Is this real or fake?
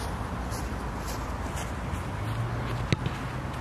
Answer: real